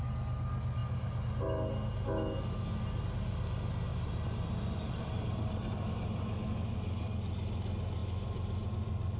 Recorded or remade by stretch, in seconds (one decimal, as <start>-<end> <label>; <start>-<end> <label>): 0.0-3.9 recorded; 3.9-5.9 remade; 5.9-8.0 recorded; 8.0-8.7 remade; 8.7-9.2 recorded